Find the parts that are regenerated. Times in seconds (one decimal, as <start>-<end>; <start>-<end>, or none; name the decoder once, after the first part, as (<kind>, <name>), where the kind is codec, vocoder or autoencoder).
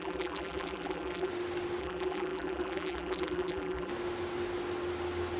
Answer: 0.0-1.3 (vocoder, BigVGAN v2); 1.8-3.9